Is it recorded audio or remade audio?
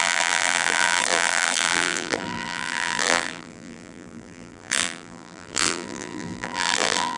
remade